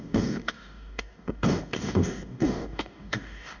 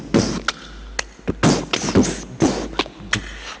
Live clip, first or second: second